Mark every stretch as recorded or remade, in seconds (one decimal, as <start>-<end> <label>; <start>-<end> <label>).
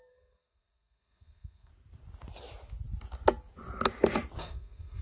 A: 0.0-1.7 remade; 1.7-4.4 recorded; 4.4-5.0 remade